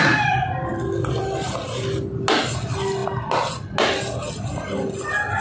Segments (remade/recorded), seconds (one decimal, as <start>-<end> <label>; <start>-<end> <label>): 0.0-5.4 recorded